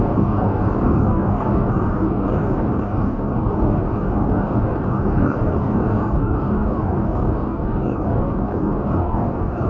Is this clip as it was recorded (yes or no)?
no